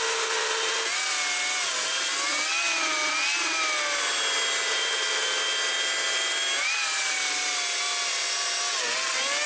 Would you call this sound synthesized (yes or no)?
no